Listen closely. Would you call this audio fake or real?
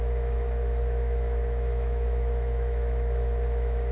fake